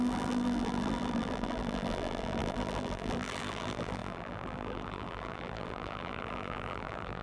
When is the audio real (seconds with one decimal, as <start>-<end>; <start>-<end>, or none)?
none

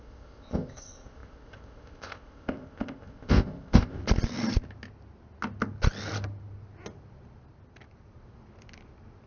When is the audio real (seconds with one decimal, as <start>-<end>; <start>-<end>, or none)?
4.0-9.3